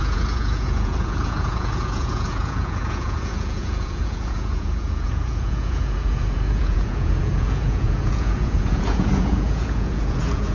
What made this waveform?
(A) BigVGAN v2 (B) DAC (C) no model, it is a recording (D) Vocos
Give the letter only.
D